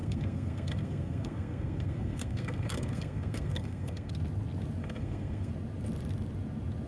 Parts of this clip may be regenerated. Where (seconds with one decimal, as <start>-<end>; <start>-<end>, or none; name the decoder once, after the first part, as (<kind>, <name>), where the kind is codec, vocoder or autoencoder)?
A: 0.0-4.1 (codec, SNAC); 4.8-5.5